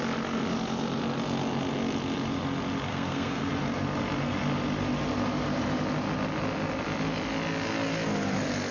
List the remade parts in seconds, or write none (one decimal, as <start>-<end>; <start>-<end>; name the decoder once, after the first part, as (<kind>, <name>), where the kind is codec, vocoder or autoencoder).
2.9-3.5 (codec, SNAC)